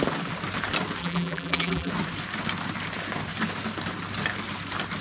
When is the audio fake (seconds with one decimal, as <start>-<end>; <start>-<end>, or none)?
1.0-1.9